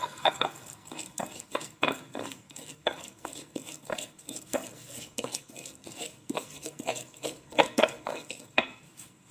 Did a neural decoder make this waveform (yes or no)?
yes